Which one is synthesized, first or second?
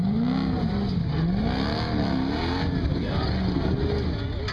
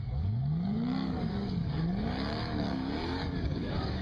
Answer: second